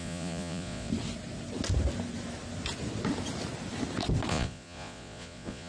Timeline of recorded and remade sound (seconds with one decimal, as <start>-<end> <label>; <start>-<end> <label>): 0.0-0.9 remade; 0.9-4.3 recorded; 4.3-5.7 remade